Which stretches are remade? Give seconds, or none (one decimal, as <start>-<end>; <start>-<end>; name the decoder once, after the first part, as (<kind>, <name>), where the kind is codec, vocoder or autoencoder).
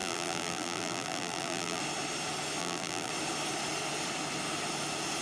0.0-1.8 (vocoder, BigVGAN v2); 2.6-3.1